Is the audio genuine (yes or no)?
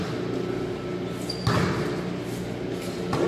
yes